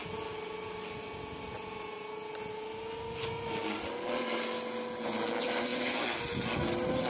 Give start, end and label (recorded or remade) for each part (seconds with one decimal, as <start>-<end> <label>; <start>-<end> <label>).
0.0-7.1 recorded